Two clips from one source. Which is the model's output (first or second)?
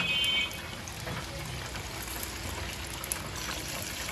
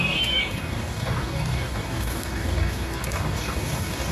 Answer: second